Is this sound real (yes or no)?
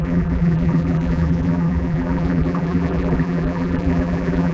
no